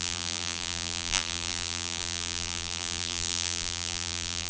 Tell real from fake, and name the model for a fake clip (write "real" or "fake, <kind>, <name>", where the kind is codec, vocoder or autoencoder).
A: fake, vocoder, BigVGAN v2